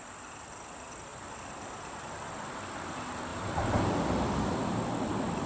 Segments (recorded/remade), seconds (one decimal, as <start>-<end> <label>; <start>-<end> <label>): 0.0-3.3 recorded; 3.3-3.9 remade; 3.9-5.5 recorded